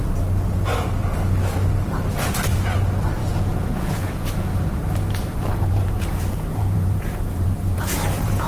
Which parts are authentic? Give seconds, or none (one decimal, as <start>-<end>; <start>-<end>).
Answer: 0.0-3.2; 4.8-5.6